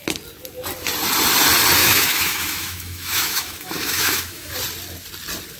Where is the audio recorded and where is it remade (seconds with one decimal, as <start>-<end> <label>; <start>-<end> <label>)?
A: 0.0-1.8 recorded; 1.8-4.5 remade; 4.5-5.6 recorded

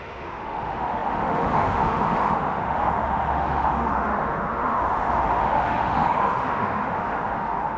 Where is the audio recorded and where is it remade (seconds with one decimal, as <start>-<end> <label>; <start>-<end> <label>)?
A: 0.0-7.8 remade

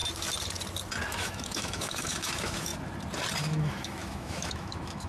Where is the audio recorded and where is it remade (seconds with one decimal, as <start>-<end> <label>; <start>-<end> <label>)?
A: 0.0-1.1 recorded; 1.1-2.7 remade; 2.7-3.4 recorded; 3.4-5.1 remade

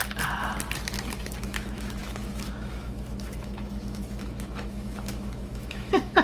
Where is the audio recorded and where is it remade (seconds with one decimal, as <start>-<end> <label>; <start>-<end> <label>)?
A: 0.0-1.4 recorded; 1.4-6.2 remade

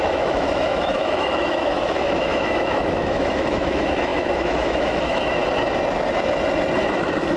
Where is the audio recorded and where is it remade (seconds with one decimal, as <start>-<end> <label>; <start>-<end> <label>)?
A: 0.0-5.4 remade; 5.4-7.0 recorded; 7.0-7.4 remade

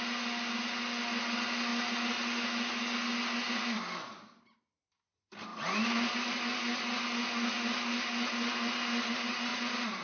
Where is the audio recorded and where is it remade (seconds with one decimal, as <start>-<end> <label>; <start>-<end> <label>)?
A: 0.0-10.0 recorded